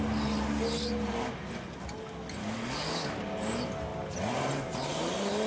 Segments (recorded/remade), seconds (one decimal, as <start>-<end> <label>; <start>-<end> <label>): 0.0-2.4 recorded; 2.4-3.2 remade; 3.2-5.5 recorded